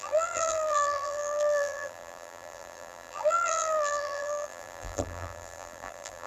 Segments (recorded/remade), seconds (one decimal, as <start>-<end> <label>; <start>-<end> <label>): 0.0-6.3 remade